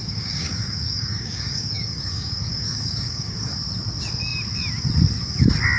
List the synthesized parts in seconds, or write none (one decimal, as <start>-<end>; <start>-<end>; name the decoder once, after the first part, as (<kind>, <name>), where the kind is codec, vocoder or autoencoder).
0.0-3.5 (codec, DAC)